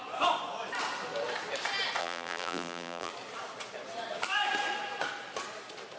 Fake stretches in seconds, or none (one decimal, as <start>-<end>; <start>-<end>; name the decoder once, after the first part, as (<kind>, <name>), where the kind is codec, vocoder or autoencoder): 2.0-3.1 (vocoder, BigVGAN v2)